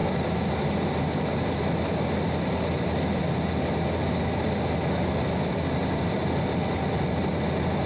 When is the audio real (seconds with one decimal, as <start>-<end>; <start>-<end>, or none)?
0.0-7.9

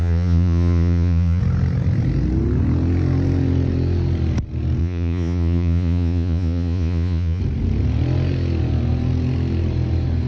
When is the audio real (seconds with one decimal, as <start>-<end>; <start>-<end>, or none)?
1.4-4.8; 7.4-10.3

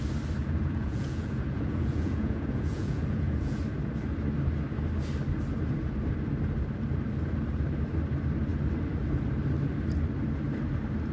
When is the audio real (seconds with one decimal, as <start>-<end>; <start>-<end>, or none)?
0.0-0.4; 3.6-11.1

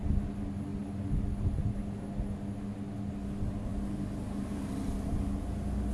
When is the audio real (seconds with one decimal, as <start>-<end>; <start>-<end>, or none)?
0.0-5.9

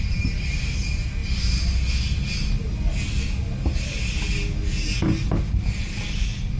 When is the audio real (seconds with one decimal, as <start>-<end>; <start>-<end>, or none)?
0.0-6.6

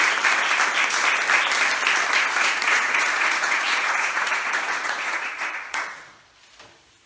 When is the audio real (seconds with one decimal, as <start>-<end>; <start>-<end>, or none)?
0.0-2.4; 6.2-7.1

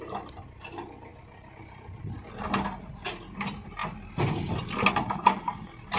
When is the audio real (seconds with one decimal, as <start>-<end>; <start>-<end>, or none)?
0.0-6.0

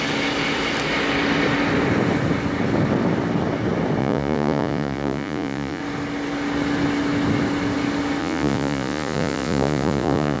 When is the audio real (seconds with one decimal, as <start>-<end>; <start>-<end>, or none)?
0.0-4.0; 5.8-8.2